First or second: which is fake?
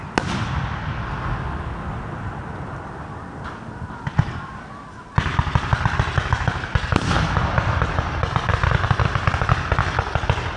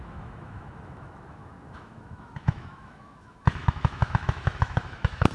second